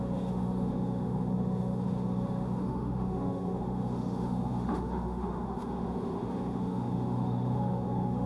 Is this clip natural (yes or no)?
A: no